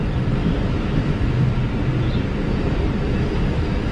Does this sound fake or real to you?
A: real